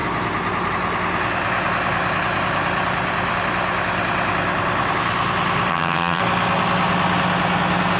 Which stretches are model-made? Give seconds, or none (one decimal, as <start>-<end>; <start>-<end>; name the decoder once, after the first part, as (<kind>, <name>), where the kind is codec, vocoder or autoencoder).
5.7-6.2 (vocoder, HiFi-GAN)